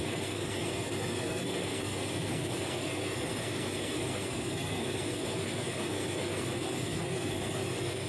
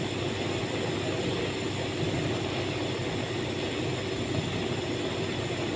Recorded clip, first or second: second